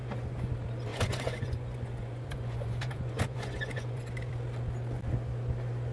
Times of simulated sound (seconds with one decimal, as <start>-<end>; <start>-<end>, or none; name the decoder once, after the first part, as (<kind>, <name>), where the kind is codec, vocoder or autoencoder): 0.0-0.5 (vocoder, Vocos); 0.9-4.0